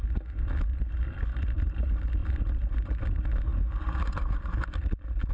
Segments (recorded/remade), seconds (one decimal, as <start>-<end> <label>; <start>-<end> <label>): 0.0-0.7 recorded; 0.7-1.7 remade; 1.7-2.2 recorded; 2.2-3.0 remade; 3.0-5.3 recorded